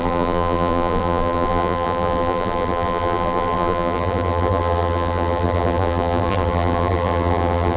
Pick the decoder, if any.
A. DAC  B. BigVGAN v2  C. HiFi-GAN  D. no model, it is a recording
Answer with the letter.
B